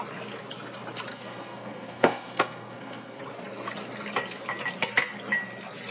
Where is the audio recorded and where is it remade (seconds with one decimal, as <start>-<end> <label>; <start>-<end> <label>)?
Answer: 0.0-1.1 recorded; 1.1-3.2 remade; 3.2-5.9 recorded